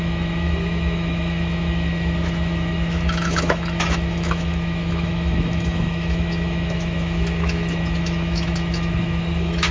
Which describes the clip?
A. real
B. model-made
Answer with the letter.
B